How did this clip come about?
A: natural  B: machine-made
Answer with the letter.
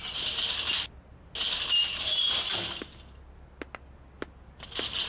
A